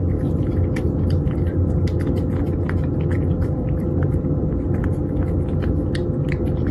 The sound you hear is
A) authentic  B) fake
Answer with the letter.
A